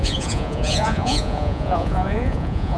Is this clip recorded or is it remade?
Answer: remade